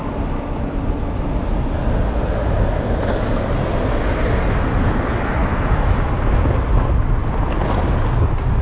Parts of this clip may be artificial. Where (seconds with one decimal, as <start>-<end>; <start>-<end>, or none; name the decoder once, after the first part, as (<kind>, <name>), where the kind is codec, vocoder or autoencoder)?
5.4-6.1 (autoencoder, DAC-VAE)